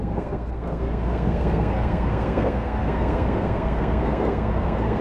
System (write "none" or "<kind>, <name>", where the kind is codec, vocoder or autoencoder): codec, SNAC